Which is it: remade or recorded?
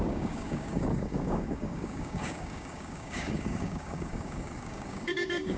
remade